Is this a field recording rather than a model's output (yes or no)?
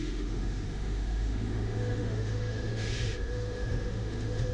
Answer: no